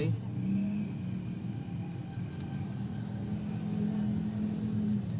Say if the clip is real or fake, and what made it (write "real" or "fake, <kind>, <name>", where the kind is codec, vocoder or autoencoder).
real